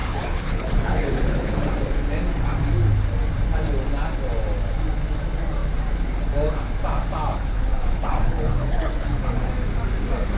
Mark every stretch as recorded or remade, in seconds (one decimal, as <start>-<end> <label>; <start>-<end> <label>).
0.0-1.7 remade; 1.7-7.3 recorded; 7.3-9.5 remade; 9.5-10.4 recorded